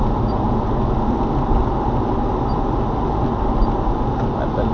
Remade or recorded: recorded